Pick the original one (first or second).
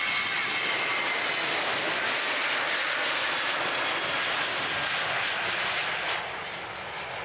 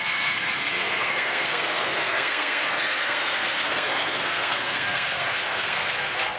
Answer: first